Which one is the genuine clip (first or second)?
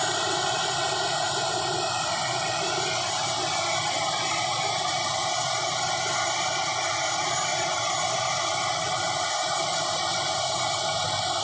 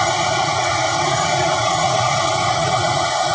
first